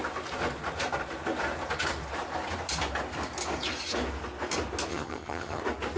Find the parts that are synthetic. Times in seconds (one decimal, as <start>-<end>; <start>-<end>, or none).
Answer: 4.9-5.6